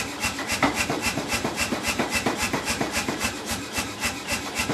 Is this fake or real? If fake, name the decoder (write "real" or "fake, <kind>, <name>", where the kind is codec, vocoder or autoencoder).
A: fake, vocoder, BigVGAN v2